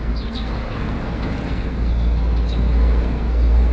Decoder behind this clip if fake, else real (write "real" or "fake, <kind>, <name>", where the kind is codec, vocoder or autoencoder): fake, codec, SNAC